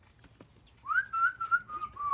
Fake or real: real